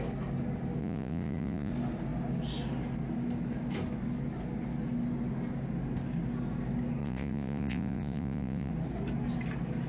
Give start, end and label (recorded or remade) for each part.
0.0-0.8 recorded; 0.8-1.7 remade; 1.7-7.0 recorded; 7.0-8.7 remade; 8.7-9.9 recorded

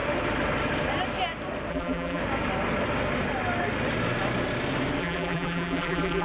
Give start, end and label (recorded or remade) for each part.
0.0-1.7 recorded; 1.7-2.2 remade; 2.2-5.0 recorded; 5.0-6.2 remade

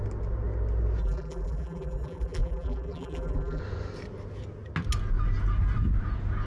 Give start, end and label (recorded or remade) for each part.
0.0-1.0 recorded; 1.0-3.6 remade; 3.6-6.5 recorded